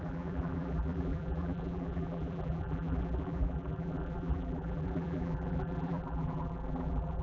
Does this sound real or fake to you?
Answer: fake